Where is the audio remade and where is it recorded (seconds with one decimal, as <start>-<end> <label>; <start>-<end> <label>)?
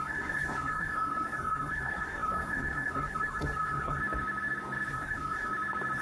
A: 0.0-4.0 remade; 4.0-4.9 recorded; 4.9-5.5 remade; 5.5-6.0 recorded